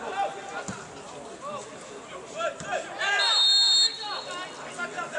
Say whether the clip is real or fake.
real